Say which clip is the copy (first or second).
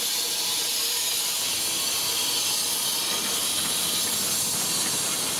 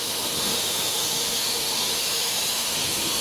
second